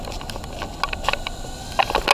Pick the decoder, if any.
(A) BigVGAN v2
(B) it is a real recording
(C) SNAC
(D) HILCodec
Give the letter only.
B